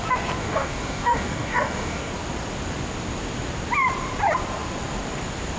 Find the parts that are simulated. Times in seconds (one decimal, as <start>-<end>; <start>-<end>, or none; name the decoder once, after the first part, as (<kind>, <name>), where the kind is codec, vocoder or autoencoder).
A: 0.4-2.1 (codec, DAC)